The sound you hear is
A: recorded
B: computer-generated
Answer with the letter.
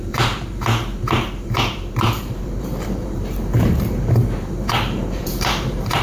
B